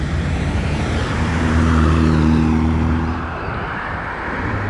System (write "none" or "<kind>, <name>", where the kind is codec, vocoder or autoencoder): vocoder, BigVGAN v2